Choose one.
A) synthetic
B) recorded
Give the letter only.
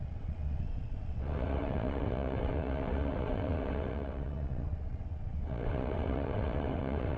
A